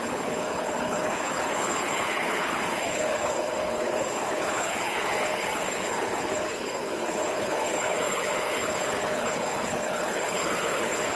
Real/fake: fake